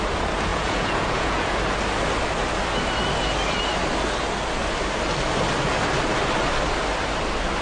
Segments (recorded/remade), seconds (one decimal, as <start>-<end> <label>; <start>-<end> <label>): 0.0-0.5 recorded; 0.5-1.6 remade; 1.6-7.6 recorded